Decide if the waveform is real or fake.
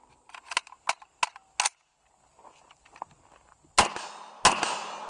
real